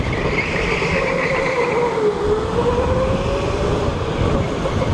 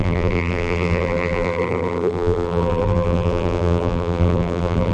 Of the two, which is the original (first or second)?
first